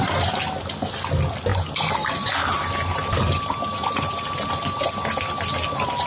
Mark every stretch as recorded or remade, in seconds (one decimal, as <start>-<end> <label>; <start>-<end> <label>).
0.0-6.1 recorded